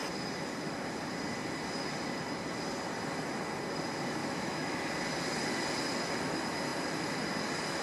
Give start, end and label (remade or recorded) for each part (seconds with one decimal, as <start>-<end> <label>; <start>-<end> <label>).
0.0-4.2 recorded; 4.2-4.9 remade; 4.9-7.8 recorded